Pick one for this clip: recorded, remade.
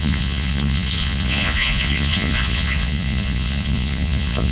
remade